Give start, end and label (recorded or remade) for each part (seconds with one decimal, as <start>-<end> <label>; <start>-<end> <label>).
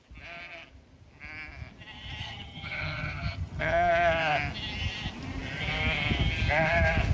0.0-2.2 recorded; 2.2-3.9 remade; 3.9-7.1 recorded